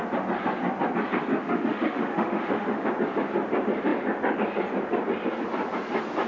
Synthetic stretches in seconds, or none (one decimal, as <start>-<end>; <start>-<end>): 1.4-2.9